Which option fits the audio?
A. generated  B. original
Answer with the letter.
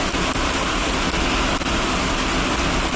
B